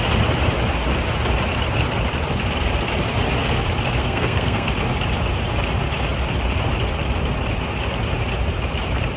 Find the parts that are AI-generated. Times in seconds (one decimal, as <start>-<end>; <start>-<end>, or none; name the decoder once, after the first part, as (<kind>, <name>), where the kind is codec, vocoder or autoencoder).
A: 4.0-4.7 (codec, SNAC)